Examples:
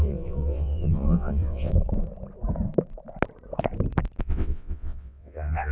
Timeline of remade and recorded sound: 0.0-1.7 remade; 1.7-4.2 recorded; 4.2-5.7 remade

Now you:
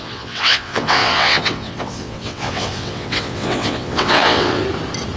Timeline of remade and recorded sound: 0.0-4.6 remade; 4.6-5.2 recorded

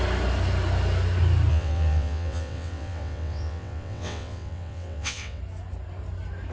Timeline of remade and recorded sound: 0.0-1.5 recorded; 1.5-5.4 remade; 5.4-6.5 recorded

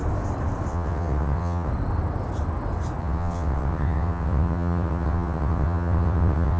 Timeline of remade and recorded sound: 0.0-0.7 recorded; 0.7-1.7 remade; 1.7-3.0 recorded; 3.0-6.6 remade